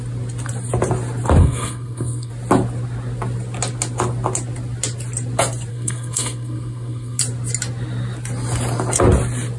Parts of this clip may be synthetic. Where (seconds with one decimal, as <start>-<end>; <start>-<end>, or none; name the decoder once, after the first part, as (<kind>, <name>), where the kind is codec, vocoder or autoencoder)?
1.4-2.3 (codec, SNAC); 5.7-7.2